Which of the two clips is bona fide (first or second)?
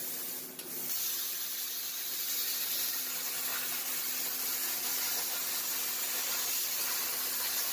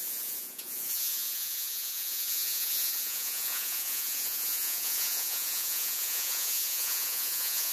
first